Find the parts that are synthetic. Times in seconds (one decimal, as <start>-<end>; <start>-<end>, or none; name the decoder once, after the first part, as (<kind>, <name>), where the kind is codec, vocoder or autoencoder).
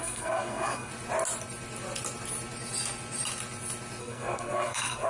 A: 0.0-0.9 (codec, SNAC); 4.0-5.1